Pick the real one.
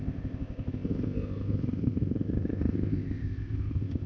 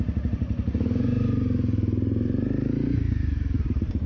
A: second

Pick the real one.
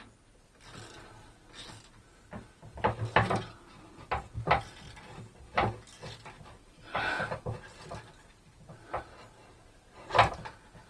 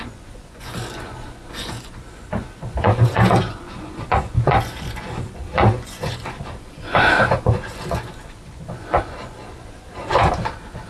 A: first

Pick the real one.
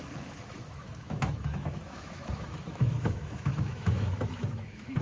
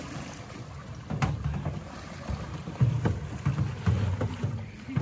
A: second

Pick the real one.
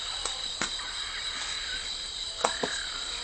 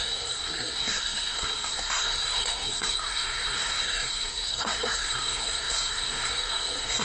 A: first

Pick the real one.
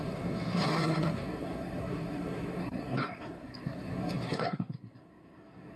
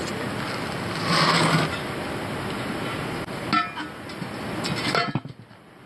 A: second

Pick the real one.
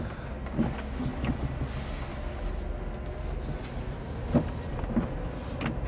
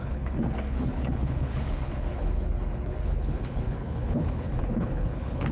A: first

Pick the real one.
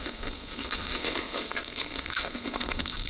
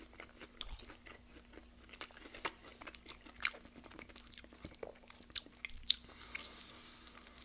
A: second